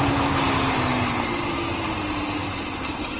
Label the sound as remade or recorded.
recorded